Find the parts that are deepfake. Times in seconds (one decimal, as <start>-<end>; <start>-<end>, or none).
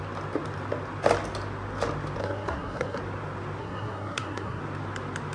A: 2.2-3.0; 3.6-4.6